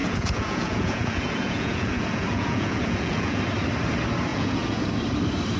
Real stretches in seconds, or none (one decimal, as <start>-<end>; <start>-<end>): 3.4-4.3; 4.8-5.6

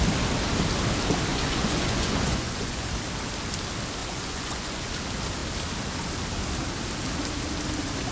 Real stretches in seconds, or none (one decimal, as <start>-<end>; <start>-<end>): 0.0-1.3; 2.9-4.0; 4.9-8.1

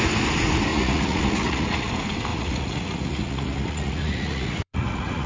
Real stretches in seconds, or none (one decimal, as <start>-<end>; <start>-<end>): 0.0-0.7; 1.9-2.3